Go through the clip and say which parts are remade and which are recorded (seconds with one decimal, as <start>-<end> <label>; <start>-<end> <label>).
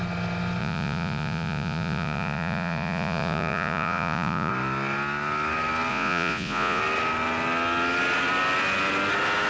0.0-0.6 recorded; 0.6-4.5 remade; 4.5-5.9 recorded; 5.9-6.8 remade; 6.8-9.5 recorded